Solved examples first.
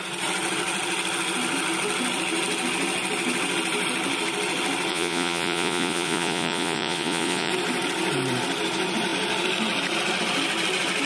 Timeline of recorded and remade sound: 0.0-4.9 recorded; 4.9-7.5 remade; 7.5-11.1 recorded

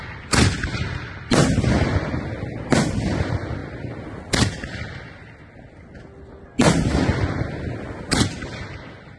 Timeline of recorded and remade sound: 0.0-9.2 recorded

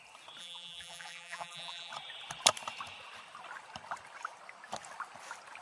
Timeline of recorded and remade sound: 0.0-0.4 recorded; 0.4-1.9 remade; 1.9-5.6 recorded